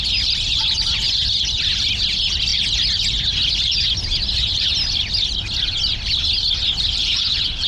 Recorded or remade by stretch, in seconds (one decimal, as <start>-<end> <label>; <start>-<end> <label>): 0.0-7.0 recorded; 7.0-7.7 remade

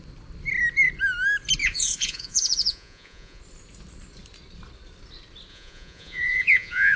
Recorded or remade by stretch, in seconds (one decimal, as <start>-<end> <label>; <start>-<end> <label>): 0.0-1.6 recorded; 1.6-3.4 remade; 3.4-5.5 recorded; 5.5-7.0 remade

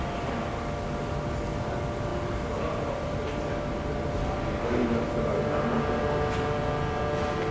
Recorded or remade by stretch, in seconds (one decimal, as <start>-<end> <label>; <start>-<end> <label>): 0.0-7.5 recorded

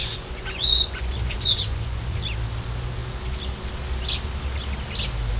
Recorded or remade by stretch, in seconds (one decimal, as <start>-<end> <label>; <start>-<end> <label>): 0.0-2.2 remade; 2.2-5.4 recorded

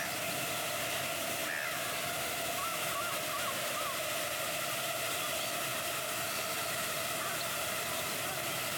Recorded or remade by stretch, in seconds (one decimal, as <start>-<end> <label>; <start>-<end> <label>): 0.0-8.8 recorded

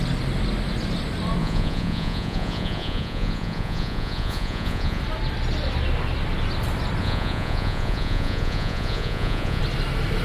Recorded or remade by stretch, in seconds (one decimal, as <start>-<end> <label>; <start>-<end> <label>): 0.0-1.4 recorded; 1.4-5.0 remade; 5.0-7.0 recorded; 7.0-9.6 remade; 9.6-10.2 recorded